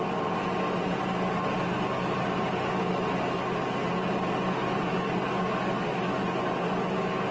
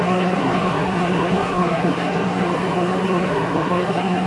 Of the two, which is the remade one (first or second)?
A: second